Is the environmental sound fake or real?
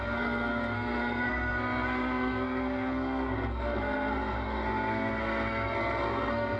fake